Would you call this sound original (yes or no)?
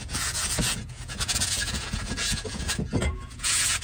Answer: no